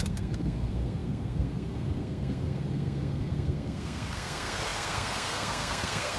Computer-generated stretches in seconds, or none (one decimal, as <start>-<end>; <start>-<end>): 0.0-6.2